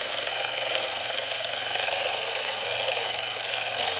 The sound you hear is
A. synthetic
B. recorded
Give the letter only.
A